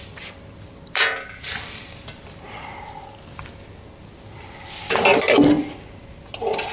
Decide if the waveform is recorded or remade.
recorded